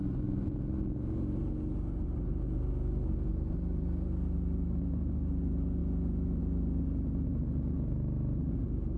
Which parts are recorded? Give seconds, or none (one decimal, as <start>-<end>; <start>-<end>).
0.0-9.0